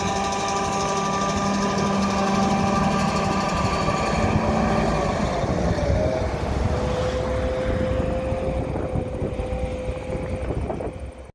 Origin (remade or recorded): recorded